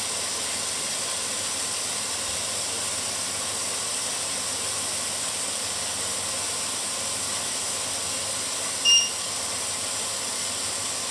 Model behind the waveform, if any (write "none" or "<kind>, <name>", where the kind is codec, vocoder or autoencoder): none